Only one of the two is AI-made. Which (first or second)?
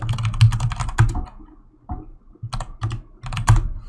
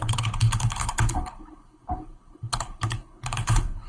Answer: second